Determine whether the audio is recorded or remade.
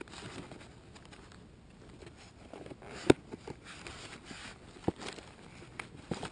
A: recorded